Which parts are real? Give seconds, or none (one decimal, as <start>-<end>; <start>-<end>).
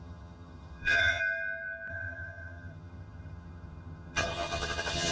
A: 1.2-1.9